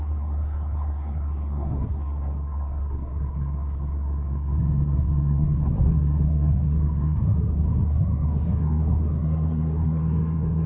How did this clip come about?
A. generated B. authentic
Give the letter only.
A